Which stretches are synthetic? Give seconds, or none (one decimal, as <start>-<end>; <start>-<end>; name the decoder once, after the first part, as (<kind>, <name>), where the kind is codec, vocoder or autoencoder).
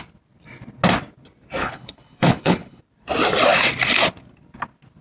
1.6-2.8 (codec, HILCodec)